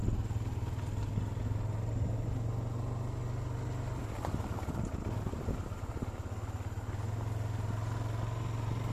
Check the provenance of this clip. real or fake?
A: real